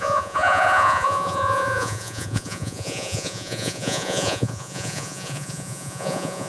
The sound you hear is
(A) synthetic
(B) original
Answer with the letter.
A